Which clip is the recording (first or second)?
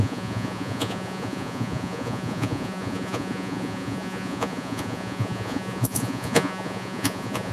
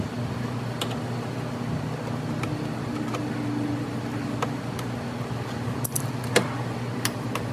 second